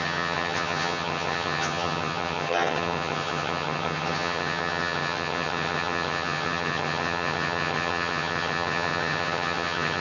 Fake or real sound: fake